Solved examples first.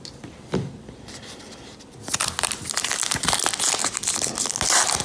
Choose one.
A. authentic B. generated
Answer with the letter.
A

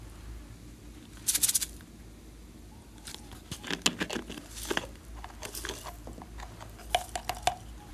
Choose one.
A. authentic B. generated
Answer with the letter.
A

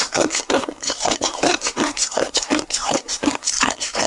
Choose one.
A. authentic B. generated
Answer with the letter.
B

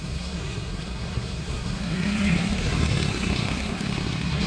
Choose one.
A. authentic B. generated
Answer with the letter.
B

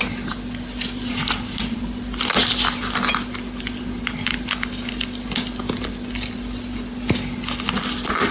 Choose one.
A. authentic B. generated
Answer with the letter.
A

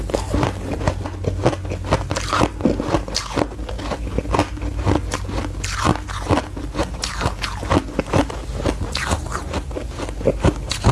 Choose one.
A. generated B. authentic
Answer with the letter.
B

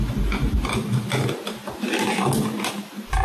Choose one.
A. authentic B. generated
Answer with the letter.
A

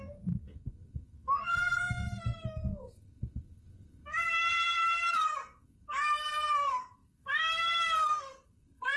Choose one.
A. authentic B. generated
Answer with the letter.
B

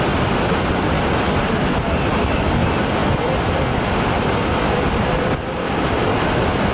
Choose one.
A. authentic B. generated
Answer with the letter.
A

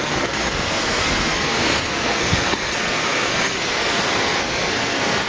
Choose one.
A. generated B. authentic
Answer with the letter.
A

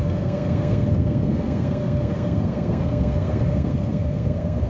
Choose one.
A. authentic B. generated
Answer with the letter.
B